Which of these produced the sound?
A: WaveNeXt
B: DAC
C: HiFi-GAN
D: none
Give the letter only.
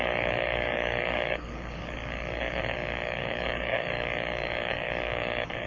B